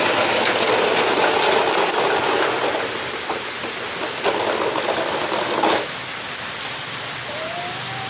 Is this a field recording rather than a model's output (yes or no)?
yes